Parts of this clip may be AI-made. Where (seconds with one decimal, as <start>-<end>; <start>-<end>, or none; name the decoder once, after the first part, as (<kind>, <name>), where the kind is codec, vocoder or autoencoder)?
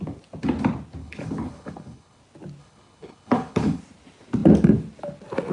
1.0-2.2 (codec, HILCodec); 2.6-3.8